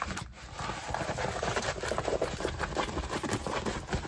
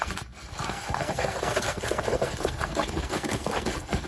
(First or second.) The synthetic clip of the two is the second